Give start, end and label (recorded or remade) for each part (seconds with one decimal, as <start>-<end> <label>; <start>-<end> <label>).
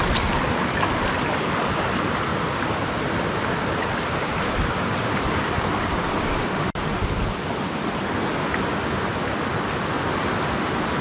0.0-11.0 recorded